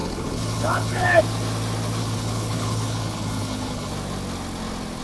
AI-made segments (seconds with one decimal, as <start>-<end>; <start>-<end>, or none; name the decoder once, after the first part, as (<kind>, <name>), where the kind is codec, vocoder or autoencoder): 0.0-1.2 (codec, HILCodec); 2.0-3.9